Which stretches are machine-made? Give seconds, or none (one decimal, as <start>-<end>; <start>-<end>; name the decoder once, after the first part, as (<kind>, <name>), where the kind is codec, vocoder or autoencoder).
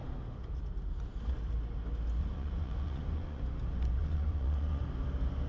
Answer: 2.2-3.4 (vocoder, Vocos); 4.0-4.8